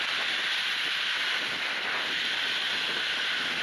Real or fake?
real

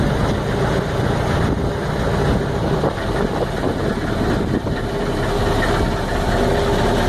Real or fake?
real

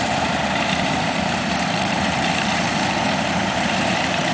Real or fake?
fake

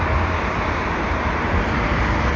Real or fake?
real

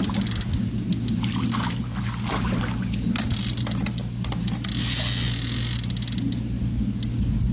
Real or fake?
real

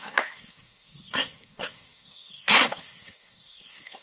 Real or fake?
fake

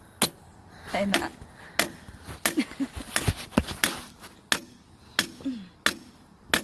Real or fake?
real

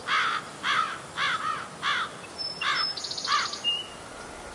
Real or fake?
real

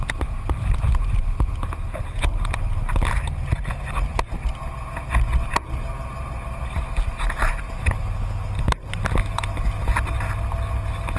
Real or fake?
real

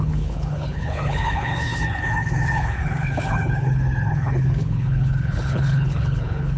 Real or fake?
fake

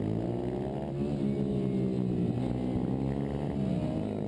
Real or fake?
real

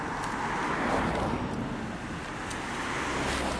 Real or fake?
real